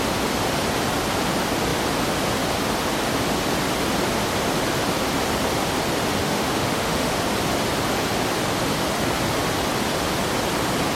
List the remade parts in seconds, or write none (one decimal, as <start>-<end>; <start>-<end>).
6.2-7.2